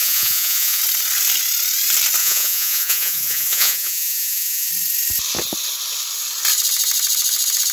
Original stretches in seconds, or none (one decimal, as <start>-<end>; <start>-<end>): 0.8-2.2; 4.7-7.7